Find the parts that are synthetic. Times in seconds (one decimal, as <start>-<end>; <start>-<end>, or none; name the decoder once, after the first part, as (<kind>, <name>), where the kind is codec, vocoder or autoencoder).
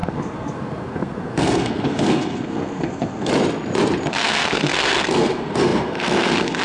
0.0-3.3 (codec, SNAC); 4.1-6.6